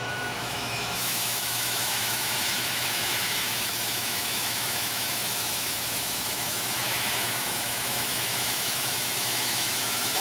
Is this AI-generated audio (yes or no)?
yes